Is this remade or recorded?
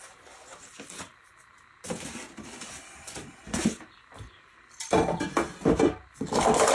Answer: recorded